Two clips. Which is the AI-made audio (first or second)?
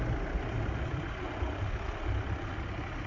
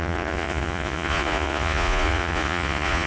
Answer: second